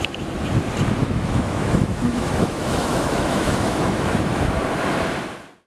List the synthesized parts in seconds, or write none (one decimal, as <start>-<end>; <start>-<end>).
1.0-4.4

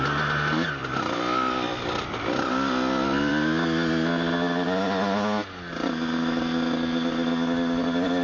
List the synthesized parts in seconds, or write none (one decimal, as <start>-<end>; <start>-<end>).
0.8-3.3

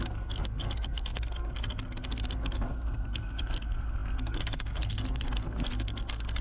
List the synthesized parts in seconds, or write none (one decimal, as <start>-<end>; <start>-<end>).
0.0-6.4

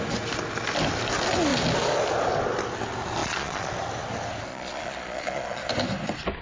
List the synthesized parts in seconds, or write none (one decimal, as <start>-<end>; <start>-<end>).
3.2-3.7; 4.5-5.6